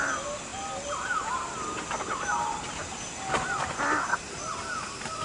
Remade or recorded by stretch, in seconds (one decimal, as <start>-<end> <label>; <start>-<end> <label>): 0.0-5.2 recorded